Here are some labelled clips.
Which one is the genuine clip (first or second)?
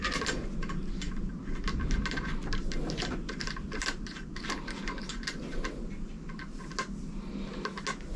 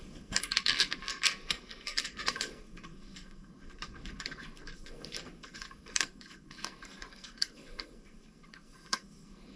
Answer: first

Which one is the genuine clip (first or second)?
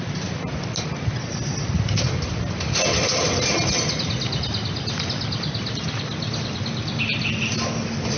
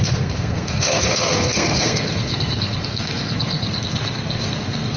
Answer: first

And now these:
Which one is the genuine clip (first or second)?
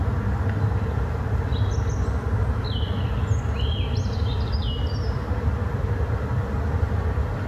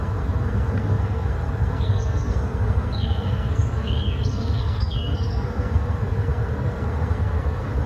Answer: first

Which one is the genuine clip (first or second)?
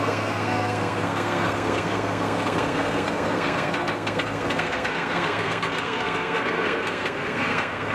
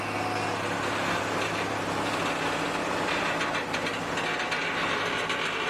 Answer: second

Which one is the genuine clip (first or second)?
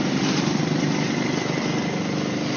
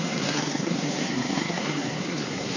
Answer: first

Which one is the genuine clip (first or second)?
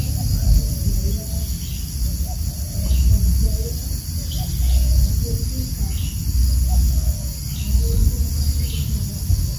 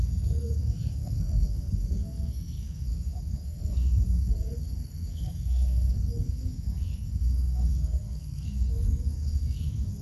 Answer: first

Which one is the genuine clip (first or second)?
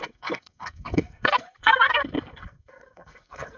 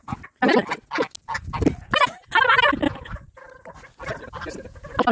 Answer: second